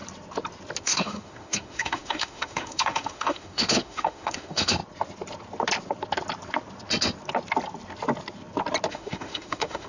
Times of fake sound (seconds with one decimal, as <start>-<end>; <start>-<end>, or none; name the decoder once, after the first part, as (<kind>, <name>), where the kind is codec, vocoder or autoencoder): 0.8-4.8 (autoencoder, DAC-VAE); 8.9-9.9